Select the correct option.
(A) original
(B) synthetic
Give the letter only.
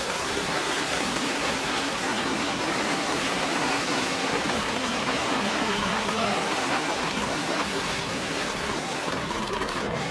B